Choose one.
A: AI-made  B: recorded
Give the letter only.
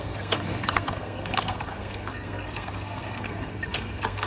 A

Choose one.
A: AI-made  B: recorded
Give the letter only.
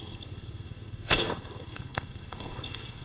A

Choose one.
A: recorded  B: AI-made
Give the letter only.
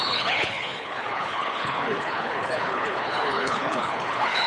B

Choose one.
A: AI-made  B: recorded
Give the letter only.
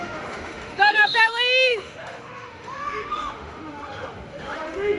A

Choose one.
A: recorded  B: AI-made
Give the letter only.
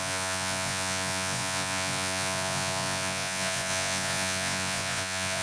B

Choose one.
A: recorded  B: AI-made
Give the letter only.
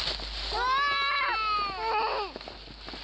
A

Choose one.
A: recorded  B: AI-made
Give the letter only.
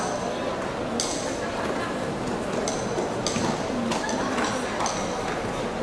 A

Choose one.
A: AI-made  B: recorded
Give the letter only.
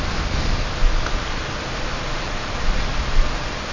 B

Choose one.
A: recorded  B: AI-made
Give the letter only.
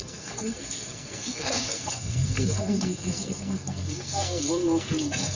B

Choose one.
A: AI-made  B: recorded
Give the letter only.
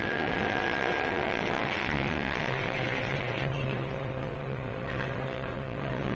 A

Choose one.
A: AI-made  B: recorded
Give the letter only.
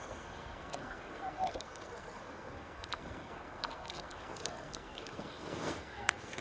A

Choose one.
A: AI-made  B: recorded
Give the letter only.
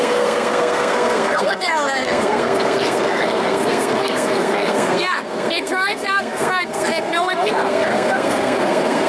A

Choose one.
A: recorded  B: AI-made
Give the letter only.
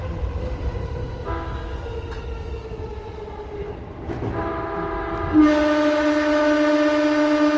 A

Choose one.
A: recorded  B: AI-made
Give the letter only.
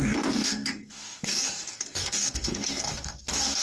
B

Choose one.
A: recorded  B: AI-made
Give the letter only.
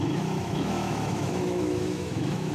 B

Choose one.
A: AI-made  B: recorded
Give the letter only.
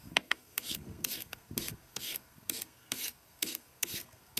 A